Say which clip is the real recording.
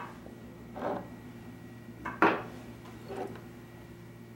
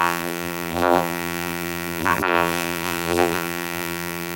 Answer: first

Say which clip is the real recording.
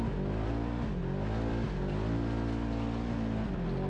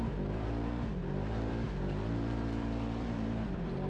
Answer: first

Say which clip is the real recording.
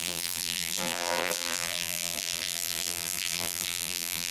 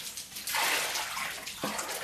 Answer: second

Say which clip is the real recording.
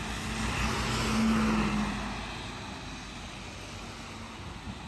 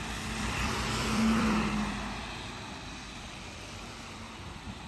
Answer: first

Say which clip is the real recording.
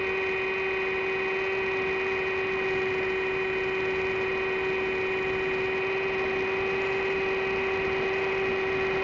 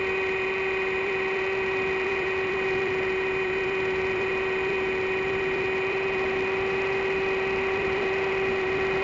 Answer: first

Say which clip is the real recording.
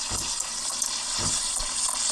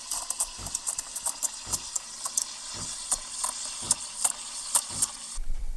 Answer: first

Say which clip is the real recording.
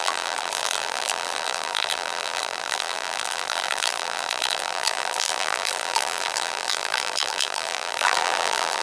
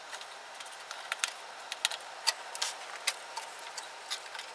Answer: second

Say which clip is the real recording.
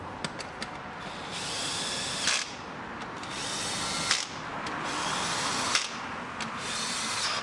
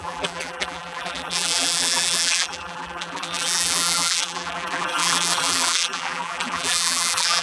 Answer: first